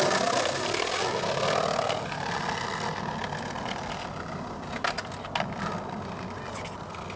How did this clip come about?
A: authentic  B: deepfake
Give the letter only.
A